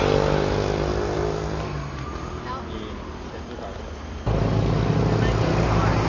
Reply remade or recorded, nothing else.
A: recorded